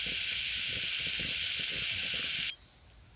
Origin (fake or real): real